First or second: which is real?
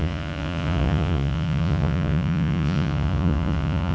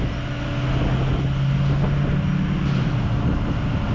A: second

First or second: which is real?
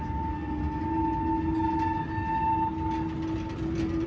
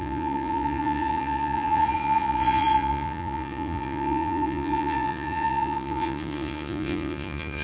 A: first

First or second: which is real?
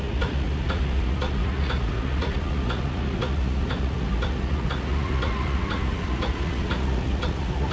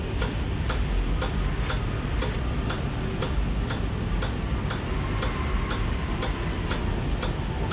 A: second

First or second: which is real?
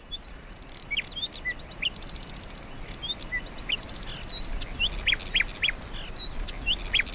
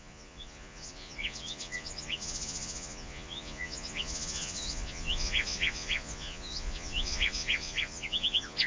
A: first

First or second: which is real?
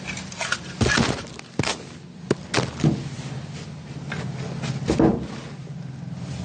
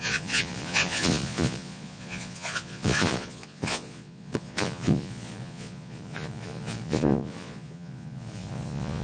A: first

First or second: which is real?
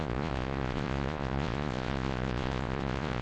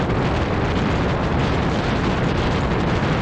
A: second